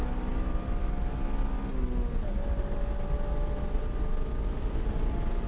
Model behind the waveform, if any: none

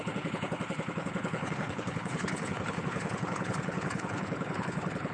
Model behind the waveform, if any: codec, HILCodec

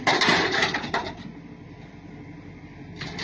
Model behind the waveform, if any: none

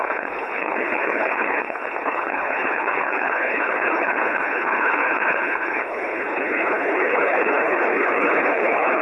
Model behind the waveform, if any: codec, HILCodec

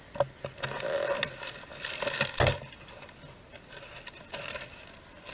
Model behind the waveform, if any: none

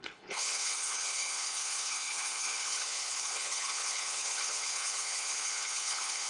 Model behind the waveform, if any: codec, HILCodec